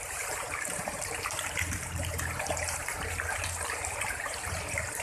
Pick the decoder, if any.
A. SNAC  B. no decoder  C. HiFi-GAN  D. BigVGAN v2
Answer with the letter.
D